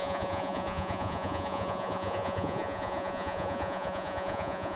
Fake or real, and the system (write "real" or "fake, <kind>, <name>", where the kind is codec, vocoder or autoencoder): fake, vocoder, Vocos